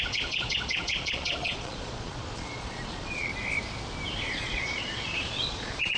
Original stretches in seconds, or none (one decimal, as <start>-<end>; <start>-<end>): 3.3-4.3